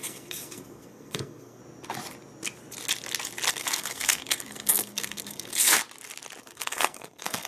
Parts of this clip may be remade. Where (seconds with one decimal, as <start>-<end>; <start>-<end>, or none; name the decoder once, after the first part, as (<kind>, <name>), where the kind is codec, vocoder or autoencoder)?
0.0-1.6 (codec, SNAC); 3.5-5.8; 6.4-7.5